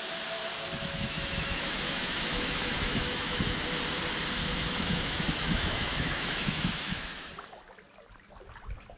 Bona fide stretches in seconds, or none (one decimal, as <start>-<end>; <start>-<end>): 0.0-0.8; 3.6-4.4; 7.3-9.0